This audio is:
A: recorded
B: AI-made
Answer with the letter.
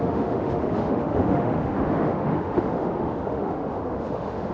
B